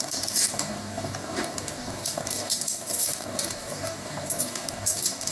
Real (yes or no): no